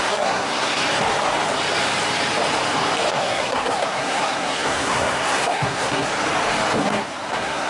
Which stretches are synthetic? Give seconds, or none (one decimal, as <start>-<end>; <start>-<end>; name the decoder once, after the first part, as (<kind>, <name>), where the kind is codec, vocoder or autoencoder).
0.0-0.8 (codec, SNAC); 3.1-6.1; 6.8-7.7